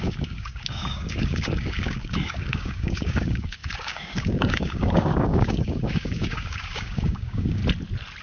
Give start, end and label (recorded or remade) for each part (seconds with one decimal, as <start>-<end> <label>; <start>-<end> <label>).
0.0-7.6 remade; 7.6-8.2 recorded